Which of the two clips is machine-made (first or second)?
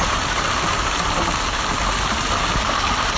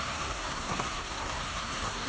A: second